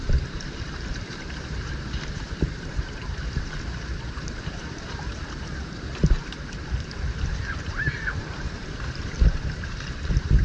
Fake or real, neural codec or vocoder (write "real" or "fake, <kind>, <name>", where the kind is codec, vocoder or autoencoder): fake, vocoder, BigVGAN v2